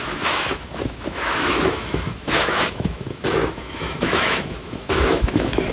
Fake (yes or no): yes